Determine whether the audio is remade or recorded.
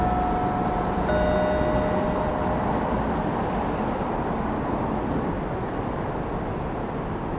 recorded